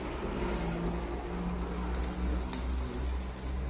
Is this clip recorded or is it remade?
recorded